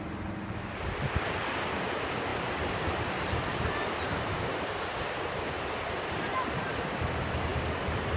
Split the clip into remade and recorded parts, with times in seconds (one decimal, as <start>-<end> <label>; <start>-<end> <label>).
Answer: 0.0-2.3 recorded; 2.3-7.1 remade; 7.1-7.5 recorded; 7.5-8.2 remade